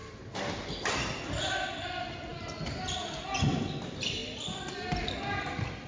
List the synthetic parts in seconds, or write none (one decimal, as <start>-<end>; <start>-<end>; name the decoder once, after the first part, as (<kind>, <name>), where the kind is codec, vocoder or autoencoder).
2.3-3.2 (vocoder, BigVGAN v2); 4.2-4.7